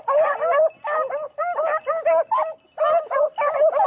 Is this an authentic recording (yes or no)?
yes